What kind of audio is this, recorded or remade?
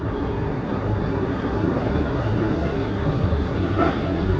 remade